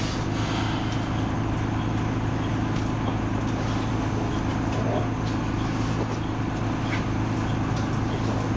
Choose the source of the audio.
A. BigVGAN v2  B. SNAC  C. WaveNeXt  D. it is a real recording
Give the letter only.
D